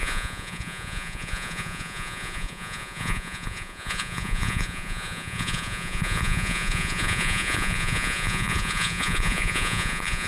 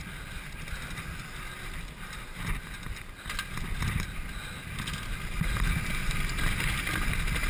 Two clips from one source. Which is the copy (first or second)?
first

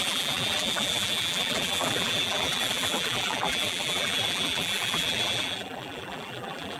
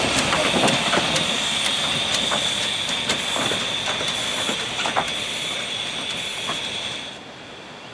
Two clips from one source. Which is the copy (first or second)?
first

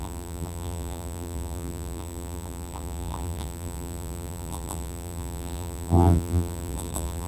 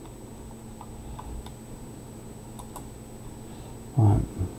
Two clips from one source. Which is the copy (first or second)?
first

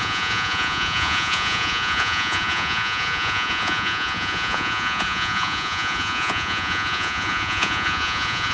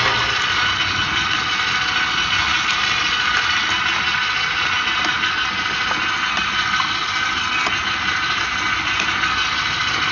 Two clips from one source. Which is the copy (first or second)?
first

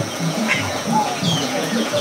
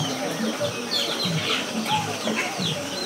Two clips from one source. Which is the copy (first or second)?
first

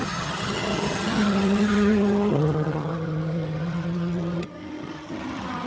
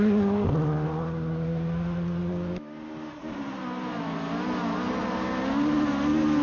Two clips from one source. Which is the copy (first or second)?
first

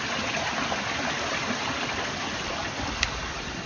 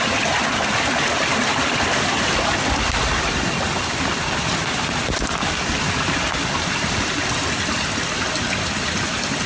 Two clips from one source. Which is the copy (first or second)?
first